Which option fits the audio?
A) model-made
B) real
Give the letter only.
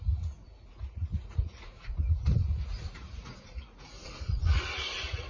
A